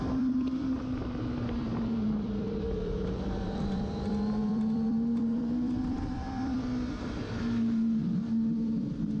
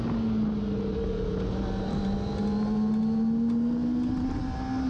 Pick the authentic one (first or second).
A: second